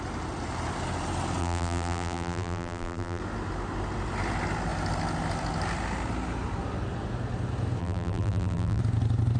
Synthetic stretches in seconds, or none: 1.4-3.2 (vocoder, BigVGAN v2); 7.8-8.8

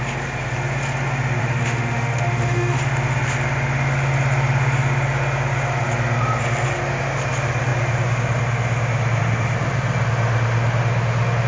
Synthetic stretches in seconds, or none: 1.4-2.8 (autoencoder, DAC-VAE)

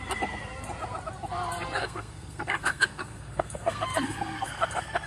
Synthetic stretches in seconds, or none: 1.8-5.1 (codec, SNAC)